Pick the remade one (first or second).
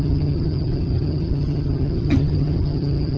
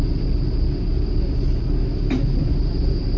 first